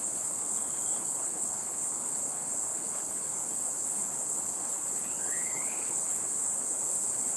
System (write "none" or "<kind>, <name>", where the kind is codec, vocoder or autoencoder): codec, HILCodec